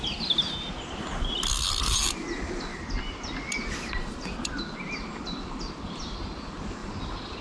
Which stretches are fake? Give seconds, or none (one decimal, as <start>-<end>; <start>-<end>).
none